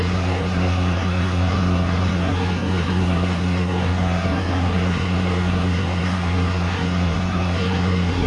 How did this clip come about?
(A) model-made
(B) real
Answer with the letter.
A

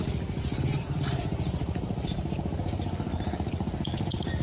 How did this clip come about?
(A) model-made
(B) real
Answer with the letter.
A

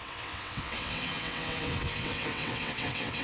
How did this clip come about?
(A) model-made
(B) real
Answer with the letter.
A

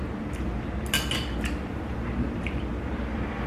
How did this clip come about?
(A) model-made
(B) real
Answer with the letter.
B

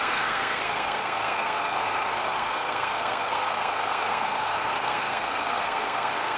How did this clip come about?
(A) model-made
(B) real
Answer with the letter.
A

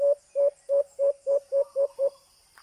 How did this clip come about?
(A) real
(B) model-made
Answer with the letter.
A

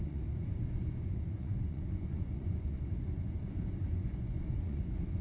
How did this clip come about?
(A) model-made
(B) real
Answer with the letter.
A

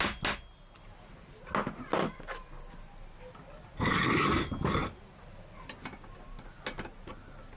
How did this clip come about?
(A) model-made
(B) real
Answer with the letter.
B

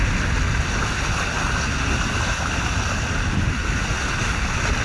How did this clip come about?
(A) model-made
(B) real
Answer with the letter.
B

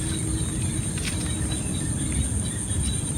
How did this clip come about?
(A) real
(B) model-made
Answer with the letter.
A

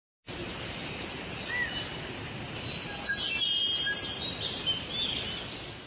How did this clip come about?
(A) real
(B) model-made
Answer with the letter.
A